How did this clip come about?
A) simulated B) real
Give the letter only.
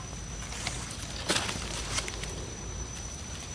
B